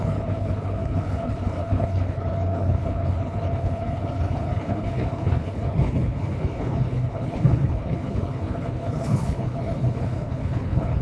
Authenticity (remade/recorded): remade